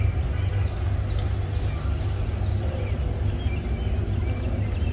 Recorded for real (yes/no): yes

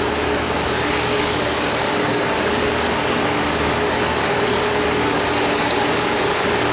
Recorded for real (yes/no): no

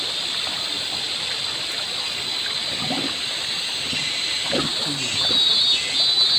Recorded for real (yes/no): yes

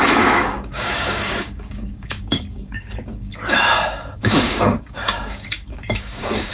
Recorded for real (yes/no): no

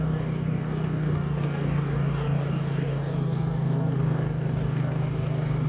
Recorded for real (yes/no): no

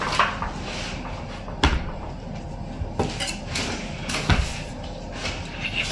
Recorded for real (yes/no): yes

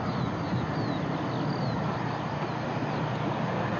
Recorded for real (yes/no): yes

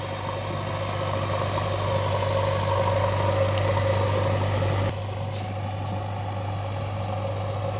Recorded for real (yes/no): yes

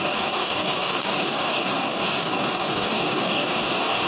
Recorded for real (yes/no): no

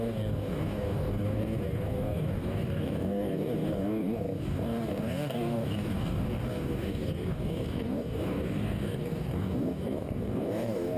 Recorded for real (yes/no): no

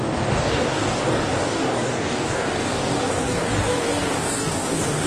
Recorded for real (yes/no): no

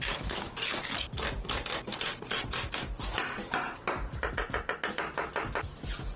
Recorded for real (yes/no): yes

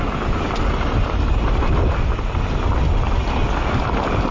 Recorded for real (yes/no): yes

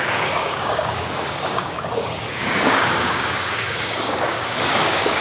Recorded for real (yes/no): no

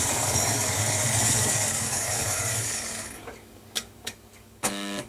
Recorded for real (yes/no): no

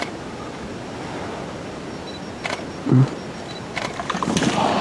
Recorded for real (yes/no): yes